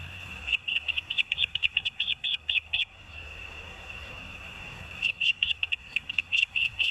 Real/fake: fake